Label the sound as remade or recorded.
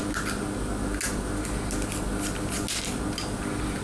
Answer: recorded